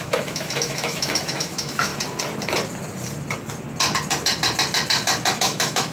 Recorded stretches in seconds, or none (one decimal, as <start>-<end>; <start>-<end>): 1.9-5.4